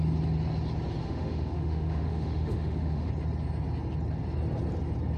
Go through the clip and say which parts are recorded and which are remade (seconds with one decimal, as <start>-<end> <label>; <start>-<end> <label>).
0.0-1.0 recorded; 1.0-3.1 remade; 3.1-5.2 recorded